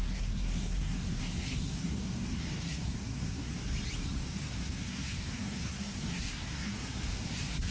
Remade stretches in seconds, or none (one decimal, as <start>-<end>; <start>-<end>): 0.0-3.5; 4.4-7.7